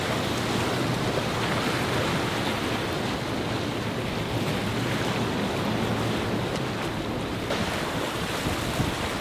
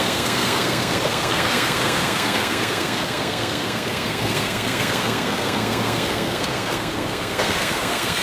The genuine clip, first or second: first